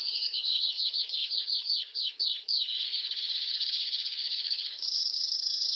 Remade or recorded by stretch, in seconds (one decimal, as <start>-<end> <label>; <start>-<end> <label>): 0.0-5.8 remade